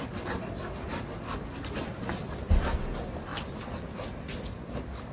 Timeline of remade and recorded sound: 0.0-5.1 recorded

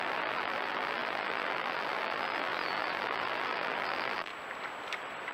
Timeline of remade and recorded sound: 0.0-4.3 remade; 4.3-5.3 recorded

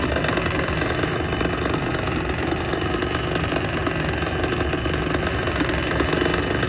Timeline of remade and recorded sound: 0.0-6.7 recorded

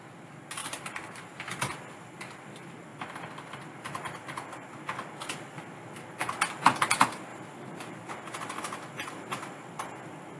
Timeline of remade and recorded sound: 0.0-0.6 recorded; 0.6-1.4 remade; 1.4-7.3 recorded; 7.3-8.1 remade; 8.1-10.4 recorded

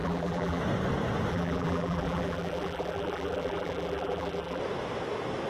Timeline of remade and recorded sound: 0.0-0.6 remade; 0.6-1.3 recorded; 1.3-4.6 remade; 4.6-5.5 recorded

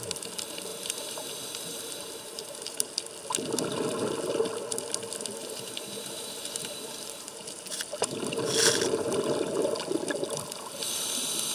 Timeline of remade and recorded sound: 0.0-0.7 recorded; 0.7-2.9 remade; 2.9-5.4 recorded; 5.4-8.2 remade; 8.2-11.5 recorded